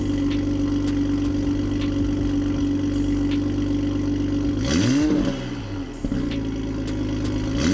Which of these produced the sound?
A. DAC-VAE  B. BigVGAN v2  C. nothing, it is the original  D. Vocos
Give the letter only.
C